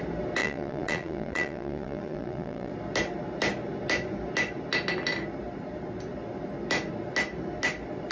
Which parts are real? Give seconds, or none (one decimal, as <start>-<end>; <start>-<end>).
0.0-0.4; 2.7-8.1